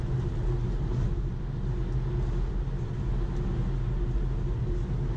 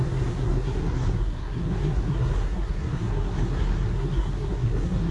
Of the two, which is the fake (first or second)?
second